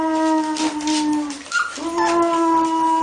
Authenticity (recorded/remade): recorded